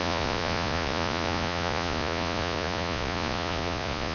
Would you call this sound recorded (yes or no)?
no